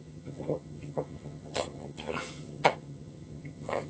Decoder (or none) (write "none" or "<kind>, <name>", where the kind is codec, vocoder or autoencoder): vocoder, HiFi-GAN